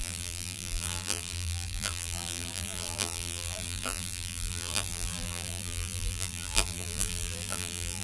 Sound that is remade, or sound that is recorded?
remade